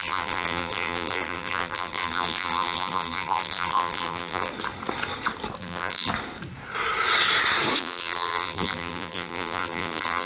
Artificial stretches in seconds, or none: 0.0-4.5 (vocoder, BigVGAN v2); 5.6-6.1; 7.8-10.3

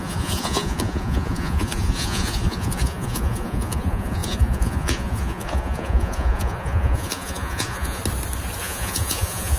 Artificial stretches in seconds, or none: 0.0-8.0 (vocoder, Vocos); 8.6-9.6

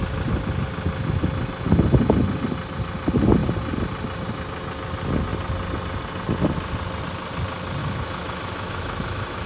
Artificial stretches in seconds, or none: 7.8-9.5 (autoencoder, DAC-VAE)

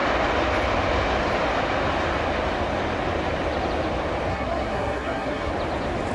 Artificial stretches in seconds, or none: 4.3-5.5 (codec, SNAC)

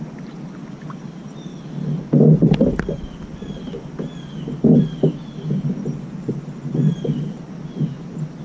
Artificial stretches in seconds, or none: none

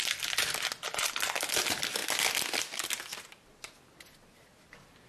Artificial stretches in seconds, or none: none

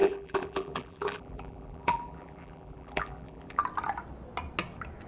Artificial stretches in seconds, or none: 0.0-3.6 (vocoder, BigVGAN v2)